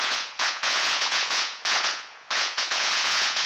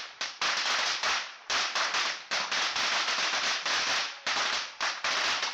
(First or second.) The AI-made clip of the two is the first